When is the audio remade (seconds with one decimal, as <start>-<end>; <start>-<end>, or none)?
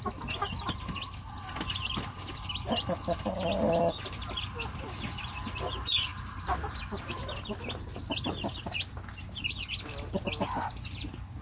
none